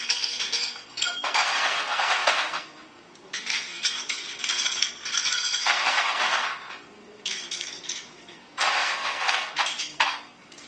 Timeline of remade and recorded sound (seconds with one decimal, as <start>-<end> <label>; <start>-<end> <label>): 0.0-10.7 remade